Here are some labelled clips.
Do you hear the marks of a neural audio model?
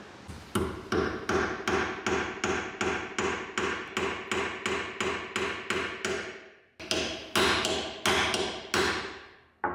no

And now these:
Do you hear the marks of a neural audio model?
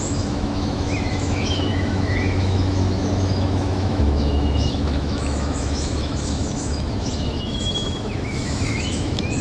yes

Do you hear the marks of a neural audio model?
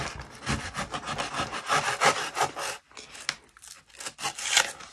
no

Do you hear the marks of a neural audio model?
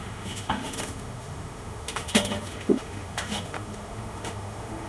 yes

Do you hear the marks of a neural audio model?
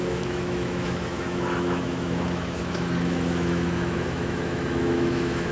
yes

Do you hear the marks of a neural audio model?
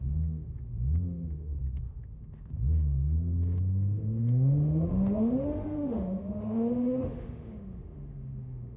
yes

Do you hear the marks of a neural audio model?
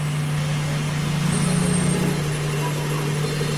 no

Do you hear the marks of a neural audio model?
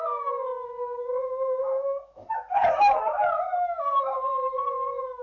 yes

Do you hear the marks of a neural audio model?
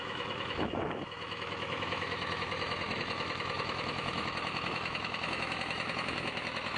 yes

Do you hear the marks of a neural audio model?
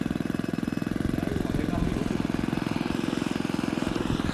no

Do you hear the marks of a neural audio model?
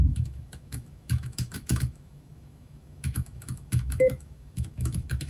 yes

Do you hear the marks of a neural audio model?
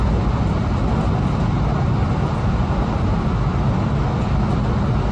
no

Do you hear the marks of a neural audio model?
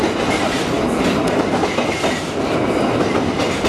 no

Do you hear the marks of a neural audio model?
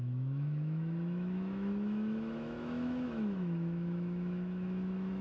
yes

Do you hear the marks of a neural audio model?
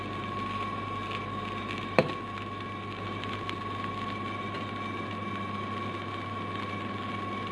no